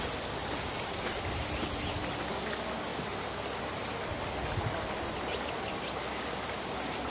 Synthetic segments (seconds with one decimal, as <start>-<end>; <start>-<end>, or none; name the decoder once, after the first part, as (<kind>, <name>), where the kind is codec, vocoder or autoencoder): 0.4-1.0 (vocoder, BigVGAN v2)